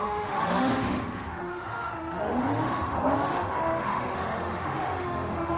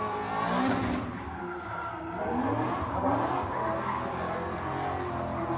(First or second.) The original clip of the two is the second